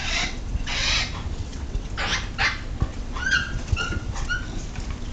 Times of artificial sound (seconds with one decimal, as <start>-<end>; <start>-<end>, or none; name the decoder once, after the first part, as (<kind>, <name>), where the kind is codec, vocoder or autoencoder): 0.0-0.9 (vocoder, WaveNeXt); 1.4-1.9; 2.9-4.3